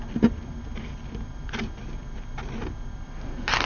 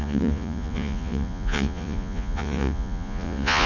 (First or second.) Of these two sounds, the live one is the first